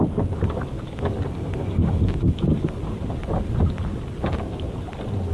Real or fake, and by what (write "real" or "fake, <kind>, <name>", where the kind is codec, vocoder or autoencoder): real